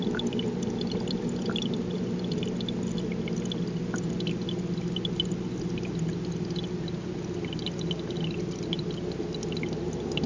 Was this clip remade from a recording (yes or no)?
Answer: no